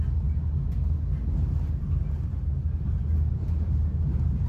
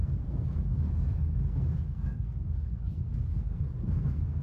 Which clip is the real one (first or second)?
first